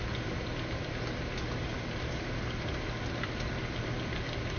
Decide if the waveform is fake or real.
real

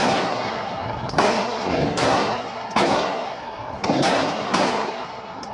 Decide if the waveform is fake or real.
fake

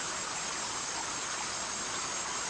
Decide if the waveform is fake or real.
real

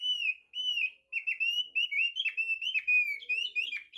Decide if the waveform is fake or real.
real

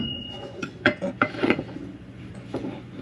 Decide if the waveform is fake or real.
fake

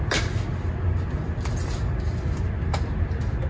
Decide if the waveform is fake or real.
real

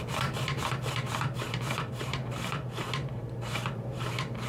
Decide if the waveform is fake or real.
fake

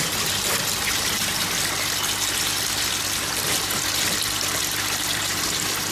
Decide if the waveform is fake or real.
real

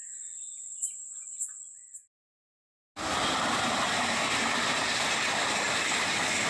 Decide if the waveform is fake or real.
real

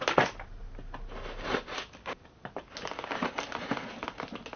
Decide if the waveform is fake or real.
real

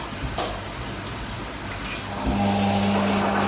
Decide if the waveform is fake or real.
real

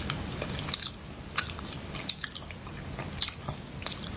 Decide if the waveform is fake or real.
real